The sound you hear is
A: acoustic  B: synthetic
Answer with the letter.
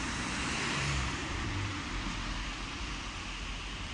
B